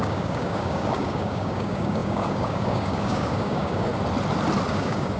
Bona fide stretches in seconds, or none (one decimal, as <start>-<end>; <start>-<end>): 3.9-4.7